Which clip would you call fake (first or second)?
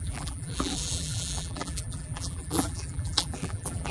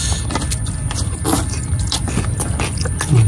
first